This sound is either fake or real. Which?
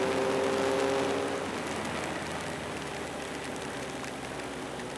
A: real